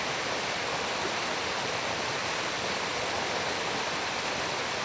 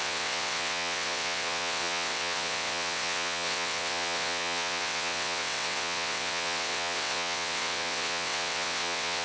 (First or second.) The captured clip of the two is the first